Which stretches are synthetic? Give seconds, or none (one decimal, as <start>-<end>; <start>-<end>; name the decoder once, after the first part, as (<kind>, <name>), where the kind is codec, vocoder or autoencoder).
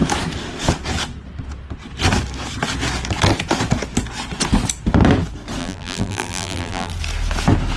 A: 5.6-6.9 (vocoder, BigVGAN v2)